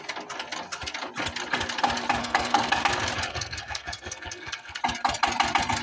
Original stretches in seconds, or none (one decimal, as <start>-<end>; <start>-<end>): 0.0-2.2; 2.8-3.3; 4.8-5.8